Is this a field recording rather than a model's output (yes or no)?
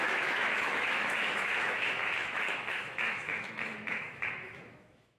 no